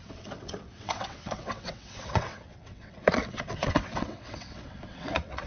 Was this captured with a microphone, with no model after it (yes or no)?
no